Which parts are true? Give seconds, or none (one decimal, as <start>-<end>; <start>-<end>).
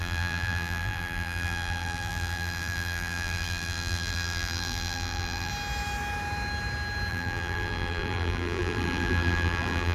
5.5-7.1